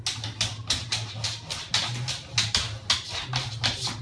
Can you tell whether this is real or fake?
real